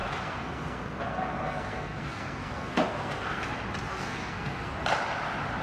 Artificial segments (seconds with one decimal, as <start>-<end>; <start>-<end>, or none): 0.0-3.4; 3.9-4.7

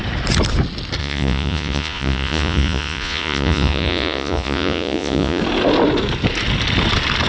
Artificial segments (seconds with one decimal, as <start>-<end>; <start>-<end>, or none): 1.0-5.4